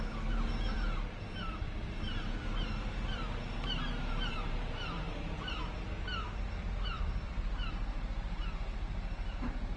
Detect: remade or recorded remade